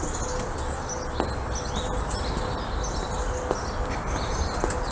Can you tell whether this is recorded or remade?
recorded